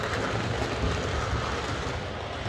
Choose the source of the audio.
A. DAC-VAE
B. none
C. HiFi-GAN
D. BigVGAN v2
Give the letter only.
B